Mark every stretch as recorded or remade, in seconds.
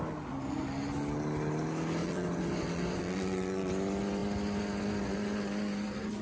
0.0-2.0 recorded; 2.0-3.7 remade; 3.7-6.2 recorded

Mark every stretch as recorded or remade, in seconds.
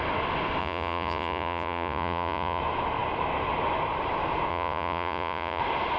0.0-0.6 recorded; 0.6-2.6 remade; 2.6-4.5 recorded; 4.5-5.6 remade; 5.6-6.0 recorded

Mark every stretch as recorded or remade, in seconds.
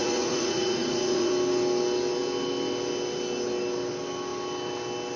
0.0-1.3 remade; 1.3-5.2 recorded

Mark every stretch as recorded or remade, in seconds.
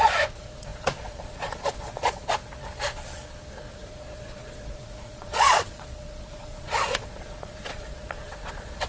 0.0-2.2 remade; 2.2-3.7 recorded; 3.7-8.9 remade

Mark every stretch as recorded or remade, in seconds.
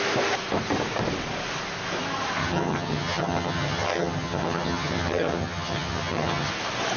0.0-2.4 recorded; 2.4-6.5 remade; 6.5-7.0 recorded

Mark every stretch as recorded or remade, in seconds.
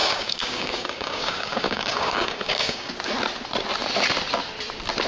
0.0-2.9 remade; 2.9-5.1 recorded